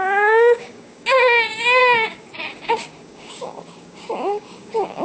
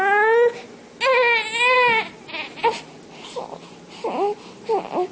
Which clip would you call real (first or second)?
second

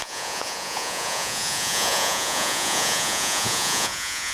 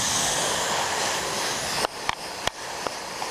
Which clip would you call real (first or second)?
second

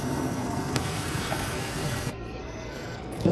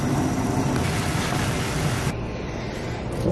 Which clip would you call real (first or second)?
second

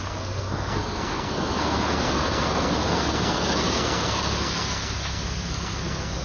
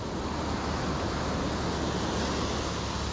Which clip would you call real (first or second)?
second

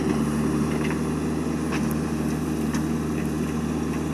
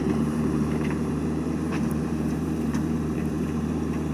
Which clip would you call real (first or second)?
first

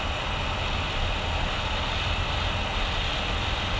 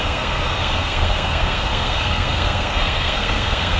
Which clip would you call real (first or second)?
first